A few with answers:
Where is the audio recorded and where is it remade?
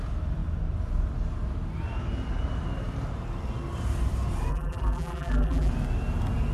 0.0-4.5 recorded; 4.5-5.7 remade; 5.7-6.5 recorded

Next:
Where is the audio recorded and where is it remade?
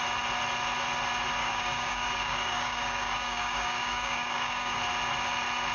0.0-1.4 recorded; 1.4-4.8 remade; 4.8-5.7 recorded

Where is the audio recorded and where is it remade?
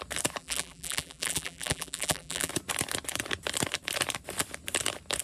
0.0-0.4 recorded; 0.4-2.5 remade; 2.5-5.2 recorded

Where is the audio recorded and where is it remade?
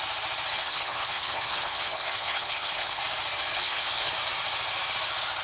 0.0-0.6 recorded; 0.6-3.0 remade; 3.0-3.5 recorded; 3.5-4.1 remade; 4.1-5.4 recorded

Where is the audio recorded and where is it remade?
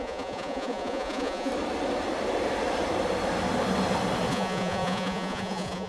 0.0-1.5 remade; 1.5-4.3 recorded; 4.3-5.9 remade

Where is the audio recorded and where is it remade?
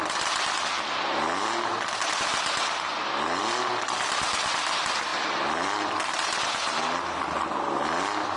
0.0-8.4 recorded